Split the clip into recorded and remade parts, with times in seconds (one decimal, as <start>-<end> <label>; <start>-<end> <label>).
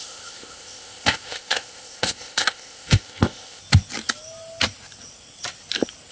0.0-3.6 remade; 3.6-6.1 recorded